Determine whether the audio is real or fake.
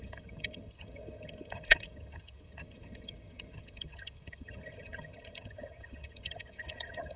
fake